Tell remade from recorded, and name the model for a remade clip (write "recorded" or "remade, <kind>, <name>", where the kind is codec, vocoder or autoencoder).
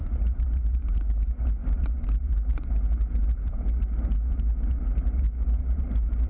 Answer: remade, vocoder, BigVGAN v2